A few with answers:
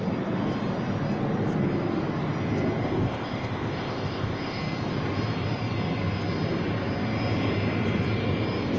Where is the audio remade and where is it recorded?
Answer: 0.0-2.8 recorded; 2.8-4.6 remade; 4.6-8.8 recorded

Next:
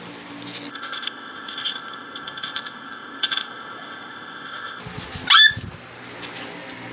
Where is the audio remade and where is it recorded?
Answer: 0.0-0.7 recorded; 0.7-4.8 remade; 4.8-6.9 recorded